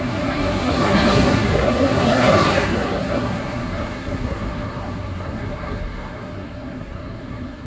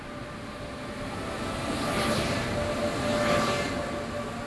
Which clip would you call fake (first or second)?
first